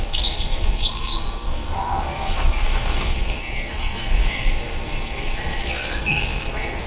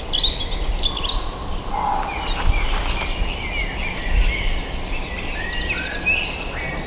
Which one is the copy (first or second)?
first